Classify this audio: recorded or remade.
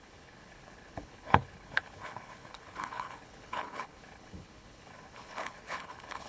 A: remade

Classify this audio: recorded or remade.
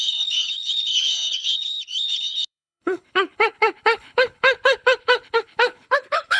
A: remade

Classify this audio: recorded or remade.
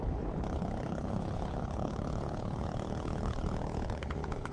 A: remade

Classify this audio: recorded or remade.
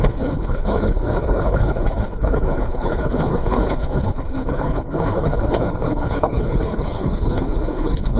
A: remade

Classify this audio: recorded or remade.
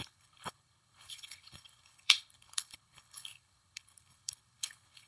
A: remade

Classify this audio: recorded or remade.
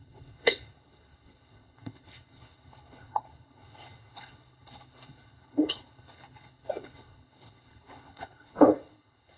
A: remade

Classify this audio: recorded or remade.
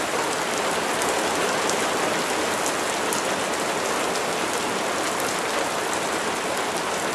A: recorded